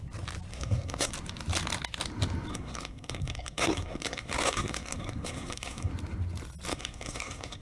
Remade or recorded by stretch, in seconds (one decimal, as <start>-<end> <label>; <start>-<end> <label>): 0.0-0.5 recorded; 0.5-1.1 remade; 1.1-2.5 recorded; 2.5-5.9 remade; 5.9-6.7 recorded; 6.7-7.6 remade